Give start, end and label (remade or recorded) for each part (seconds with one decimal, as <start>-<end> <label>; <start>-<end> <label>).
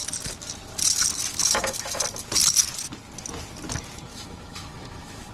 0.0-1.3 recorded; 1.3-2.0 remade; 2.0-4.1 recorded; 4.1-5.3 remade